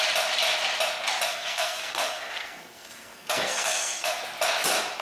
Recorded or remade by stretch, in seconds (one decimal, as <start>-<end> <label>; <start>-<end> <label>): 0.0-1.3 recorded; 1.3-4.2 remade; 4.2-5.0 recorded